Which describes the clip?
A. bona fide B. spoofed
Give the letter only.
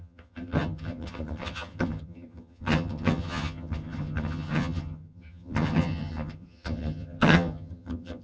B